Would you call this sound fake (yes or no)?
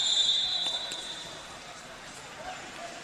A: yes